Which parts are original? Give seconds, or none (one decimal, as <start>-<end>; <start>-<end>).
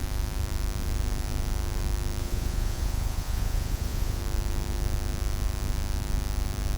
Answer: 0.0-2.2; 4.2-6.8